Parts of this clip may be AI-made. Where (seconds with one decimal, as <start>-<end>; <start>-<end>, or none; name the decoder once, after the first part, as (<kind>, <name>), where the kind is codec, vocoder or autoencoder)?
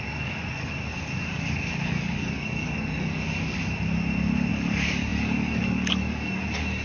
0.0-3.6 (codec, DAC); 4.5-6.8